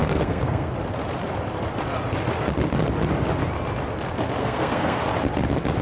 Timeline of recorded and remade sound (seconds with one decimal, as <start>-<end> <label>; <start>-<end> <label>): 0.0-0.7 remade; 0.7-4.4 recorded; 4.4-5.0 remade; 5.0-5.8 recorded